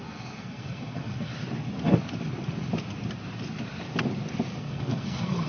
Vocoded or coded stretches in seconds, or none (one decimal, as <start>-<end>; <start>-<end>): 0.0-1.3; 4.6-5.5